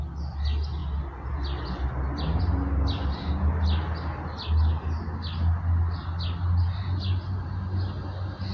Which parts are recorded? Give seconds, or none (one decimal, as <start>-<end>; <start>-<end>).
0.0-8.5